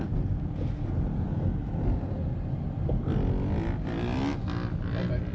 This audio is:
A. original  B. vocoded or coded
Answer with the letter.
A